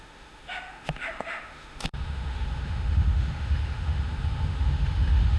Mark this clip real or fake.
fake